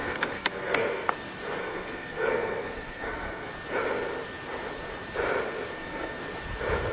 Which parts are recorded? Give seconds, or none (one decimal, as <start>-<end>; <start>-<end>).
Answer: 1.1-1.6; 3.5-5.7; 6.2-6.9